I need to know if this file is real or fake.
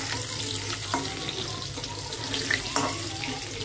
real